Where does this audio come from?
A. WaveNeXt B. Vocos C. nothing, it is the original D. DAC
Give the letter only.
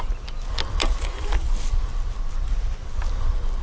C